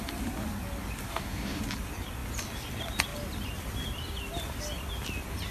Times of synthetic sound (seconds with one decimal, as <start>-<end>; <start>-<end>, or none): 1.1-1.6